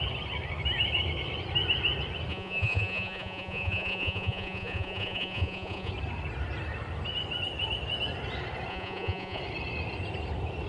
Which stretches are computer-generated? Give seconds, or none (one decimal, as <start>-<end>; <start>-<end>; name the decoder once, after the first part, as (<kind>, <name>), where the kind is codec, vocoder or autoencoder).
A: 2.3-5.9 (vocoder, Vocos); 8.7-9.4